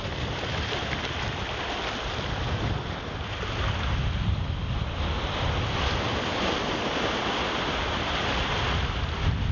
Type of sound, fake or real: real